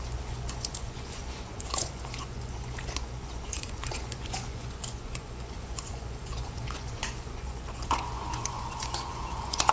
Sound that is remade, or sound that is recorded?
remade